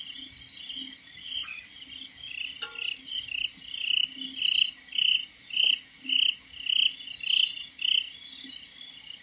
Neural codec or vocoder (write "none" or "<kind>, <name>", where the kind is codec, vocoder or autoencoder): none